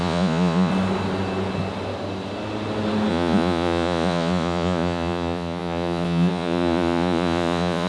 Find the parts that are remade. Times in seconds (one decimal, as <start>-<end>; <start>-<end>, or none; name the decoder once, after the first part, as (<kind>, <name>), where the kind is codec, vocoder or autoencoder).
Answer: 0.0-0.7 (vocoder, Vocos); 3.1-7.9

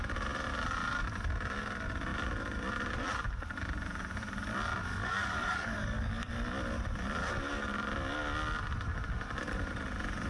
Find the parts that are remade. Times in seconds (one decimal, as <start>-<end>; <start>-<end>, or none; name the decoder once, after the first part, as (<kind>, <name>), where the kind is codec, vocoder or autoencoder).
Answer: 4.9-6.3 (codec, DAC)

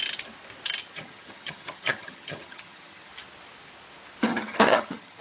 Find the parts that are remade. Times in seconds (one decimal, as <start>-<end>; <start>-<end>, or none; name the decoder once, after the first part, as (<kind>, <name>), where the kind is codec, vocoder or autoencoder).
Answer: 0.8-3.1 (vocoder, HiFi-GAN); 4.3-5.2

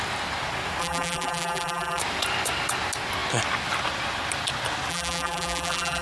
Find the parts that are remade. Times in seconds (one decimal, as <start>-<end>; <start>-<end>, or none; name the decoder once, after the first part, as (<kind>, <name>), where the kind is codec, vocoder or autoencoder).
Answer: 0.8-2.0 (vocoder, BigVGAN v2); 4.9-6.0

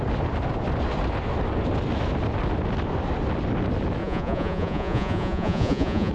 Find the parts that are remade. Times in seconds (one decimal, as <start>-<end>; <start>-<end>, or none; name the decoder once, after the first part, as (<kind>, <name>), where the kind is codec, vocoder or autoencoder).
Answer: 4.0-6.1 (vocoder, Vocos)

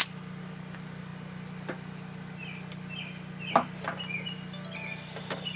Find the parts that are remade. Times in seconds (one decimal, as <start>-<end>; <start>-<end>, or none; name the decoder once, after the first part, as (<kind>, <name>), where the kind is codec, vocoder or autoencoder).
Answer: none

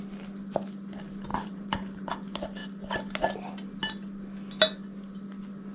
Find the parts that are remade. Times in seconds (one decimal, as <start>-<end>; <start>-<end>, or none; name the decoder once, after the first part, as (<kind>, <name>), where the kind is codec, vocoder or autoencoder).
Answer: 1.3-2.1 (vocoder, BigVGAN v2)

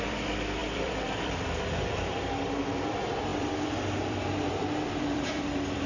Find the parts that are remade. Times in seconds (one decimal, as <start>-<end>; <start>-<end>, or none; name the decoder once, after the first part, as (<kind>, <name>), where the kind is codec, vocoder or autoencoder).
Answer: 0.0-5.9 (vocoder, BigVGAN v2)